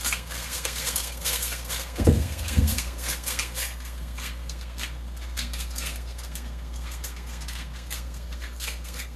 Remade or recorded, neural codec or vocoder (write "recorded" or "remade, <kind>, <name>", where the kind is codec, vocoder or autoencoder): remade, codec, SNAC